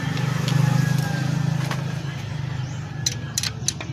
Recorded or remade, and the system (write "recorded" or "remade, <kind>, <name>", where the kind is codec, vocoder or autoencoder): recorded